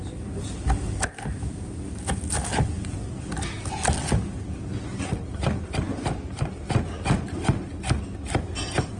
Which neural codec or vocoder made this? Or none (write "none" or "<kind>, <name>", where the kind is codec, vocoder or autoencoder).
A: none